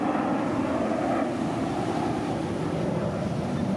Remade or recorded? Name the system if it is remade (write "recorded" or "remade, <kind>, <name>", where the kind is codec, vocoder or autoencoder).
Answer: recorded